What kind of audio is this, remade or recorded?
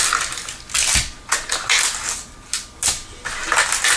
recorded